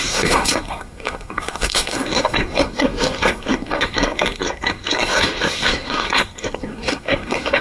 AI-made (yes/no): yes